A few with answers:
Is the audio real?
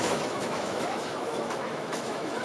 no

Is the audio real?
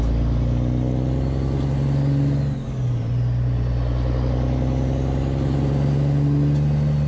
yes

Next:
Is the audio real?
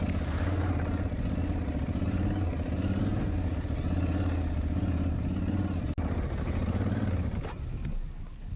yes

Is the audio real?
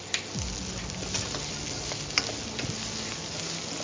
yes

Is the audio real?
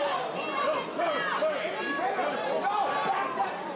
yes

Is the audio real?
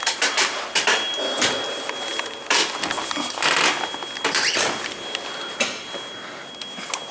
yes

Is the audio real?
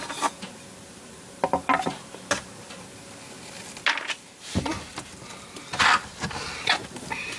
yes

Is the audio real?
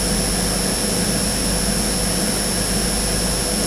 yes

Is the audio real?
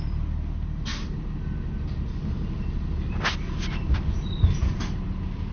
yes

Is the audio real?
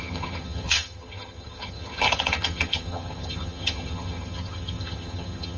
no